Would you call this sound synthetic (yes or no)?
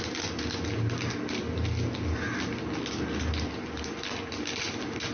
no